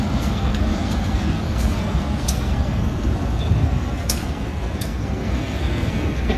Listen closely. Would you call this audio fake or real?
fake